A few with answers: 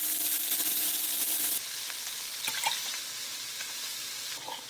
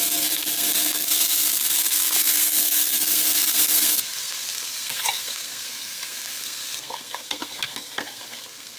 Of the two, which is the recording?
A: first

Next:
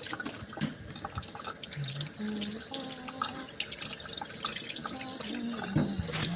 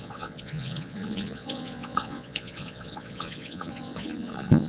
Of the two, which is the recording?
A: first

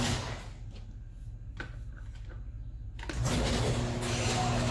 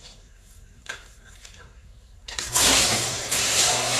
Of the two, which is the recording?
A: first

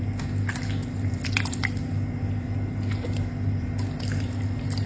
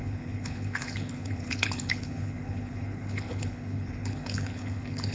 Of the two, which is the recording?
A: first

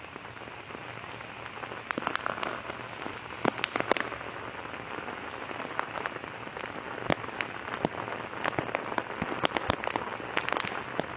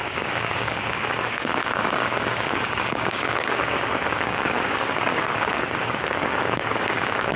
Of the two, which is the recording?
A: first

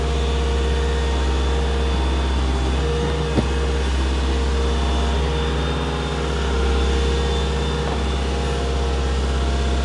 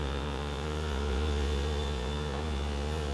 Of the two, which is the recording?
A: first